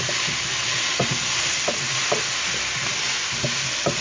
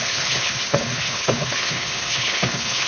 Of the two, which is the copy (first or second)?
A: second